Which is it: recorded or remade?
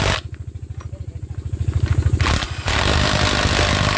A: recorded